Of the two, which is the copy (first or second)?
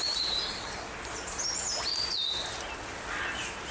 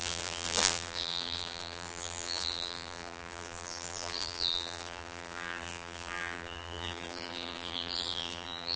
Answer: second